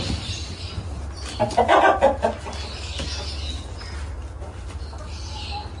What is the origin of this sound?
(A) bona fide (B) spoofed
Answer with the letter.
A